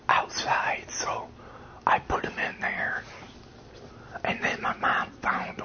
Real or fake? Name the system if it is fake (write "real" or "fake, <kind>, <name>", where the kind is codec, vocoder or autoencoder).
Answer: real